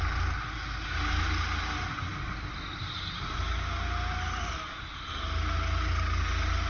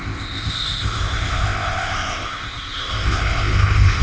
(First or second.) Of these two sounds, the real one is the first